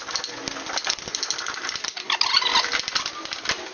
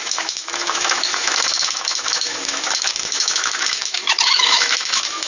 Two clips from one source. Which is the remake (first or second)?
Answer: second